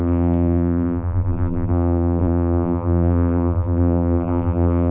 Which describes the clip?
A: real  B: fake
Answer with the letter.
B